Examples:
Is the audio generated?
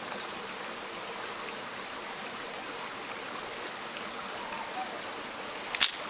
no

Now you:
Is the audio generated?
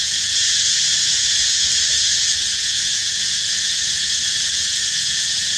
yes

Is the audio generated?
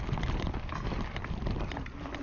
no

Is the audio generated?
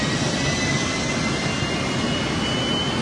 no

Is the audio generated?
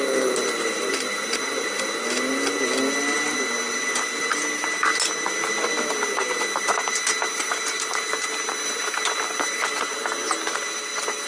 no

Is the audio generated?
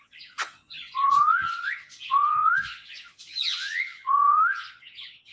yes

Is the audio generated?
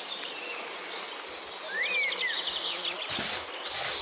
no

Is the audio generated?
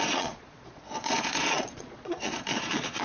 yes